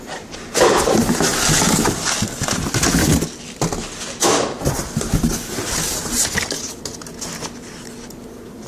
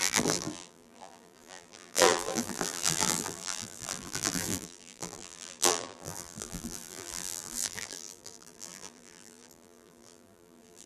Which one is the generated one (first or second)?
second